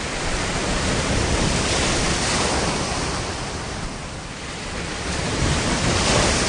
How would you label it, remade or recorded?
recorded